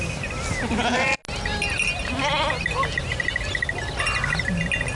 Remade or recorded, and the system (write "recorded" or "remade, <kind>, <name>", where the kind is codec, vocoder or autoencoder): recorded